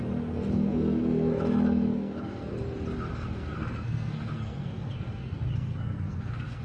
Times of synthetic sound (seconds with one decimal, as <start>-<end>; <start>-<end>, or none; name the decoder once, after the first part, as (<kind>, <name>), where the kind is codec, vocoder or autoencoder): 0.0-2.5 (codec, SNAC); 3.1-6.6